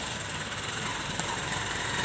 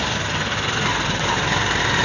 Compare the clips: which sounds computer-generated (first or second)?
first